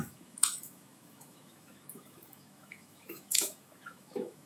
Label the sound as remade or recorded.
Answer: remade